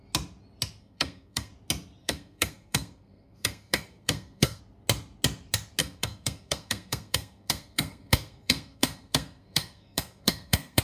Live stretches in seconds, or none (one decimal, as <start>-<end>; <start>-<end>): 0.0-0.8; 1.5-2.0; 4.6-5.8